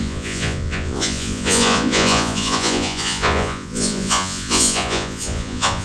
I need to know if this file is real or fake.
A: fake